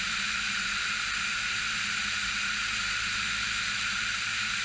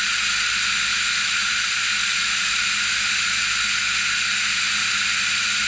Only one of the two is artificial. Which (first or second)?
first